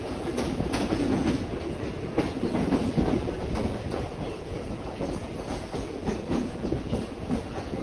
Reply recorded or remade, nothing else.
remade